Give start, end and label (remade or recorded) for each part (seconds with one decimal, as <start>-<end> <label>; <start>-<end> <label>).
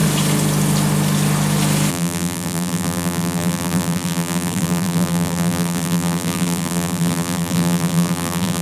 0.0-1.9 recorded; 1.9-8.6 remade